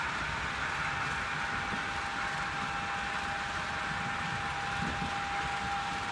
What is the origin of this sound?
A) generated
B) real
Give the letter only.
B